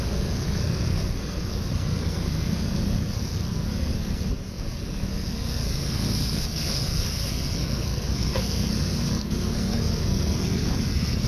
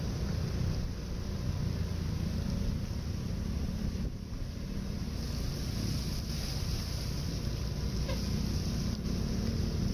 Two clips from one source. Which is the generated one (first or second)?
first